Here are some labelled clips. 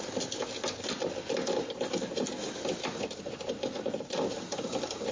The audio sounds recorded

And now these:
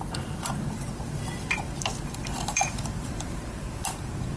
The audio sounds remade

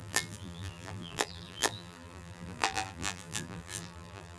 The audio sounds remade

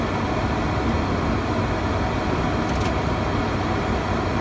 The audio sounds recorded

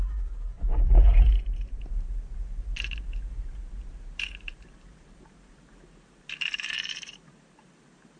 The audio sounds remade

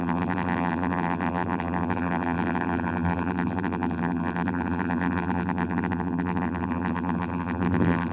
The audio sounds remade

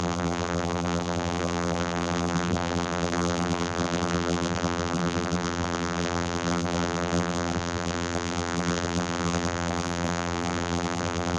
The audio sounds remade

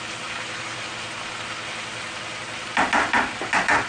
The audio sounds recorded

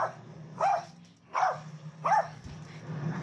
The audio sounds recorded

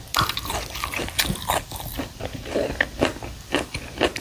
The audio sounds recorded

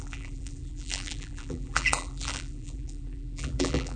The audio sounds remade